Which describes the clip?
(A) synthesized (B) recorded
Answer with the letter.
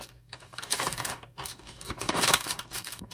A